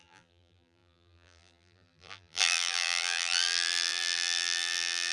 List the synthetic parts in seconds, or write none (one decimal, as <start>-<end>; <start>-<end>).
0.0-5.1